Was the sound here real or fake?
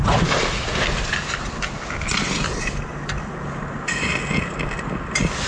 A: real